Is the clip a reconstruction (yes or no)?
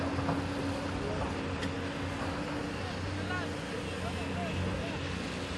no